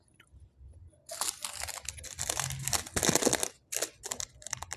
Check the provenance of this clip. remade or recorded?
recorded